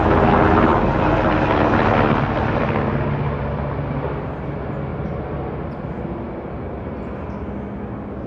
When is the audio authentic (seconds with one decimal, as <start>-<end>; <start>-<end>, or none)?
0.0-8.3